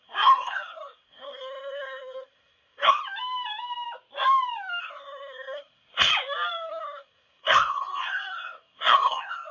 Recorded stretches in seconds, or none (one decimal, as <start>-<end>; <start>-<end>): 3.0-4.8; 6.1-6.7